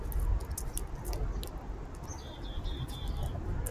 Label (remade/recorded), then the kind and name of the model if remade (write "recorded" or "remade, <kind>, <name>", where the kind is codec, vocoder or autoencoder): recorded